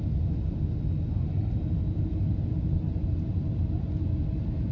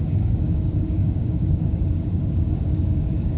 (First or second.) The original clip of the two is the first